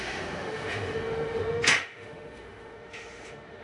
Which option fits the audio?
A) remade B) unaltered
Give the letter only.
A